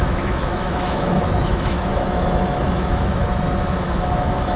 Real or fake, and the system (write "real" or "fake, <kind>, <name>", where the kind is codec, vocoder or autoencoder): fake, autoencoder, DAC-VAE